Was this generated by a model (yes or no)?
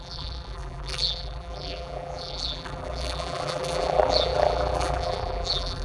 yes